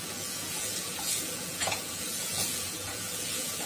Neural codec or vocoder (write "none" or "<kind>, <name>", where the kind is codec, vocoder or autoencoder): vocoder, Vocos